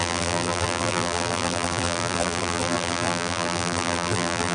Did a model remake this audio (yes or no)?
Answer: yes